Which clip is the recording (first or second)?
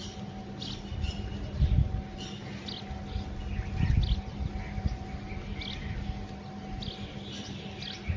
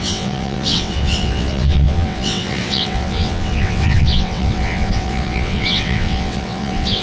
first